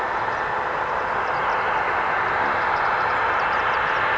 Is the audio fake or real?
real